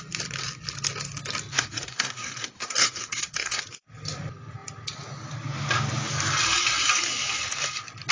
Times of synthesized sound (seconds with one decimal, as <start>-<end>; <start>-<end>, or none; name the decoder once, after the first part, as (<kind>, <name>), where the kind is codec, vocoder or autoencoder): 1.5-3.6 (codec, SNAC)